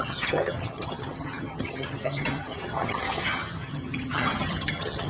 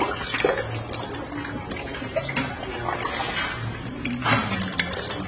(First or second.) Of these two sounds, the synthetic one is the first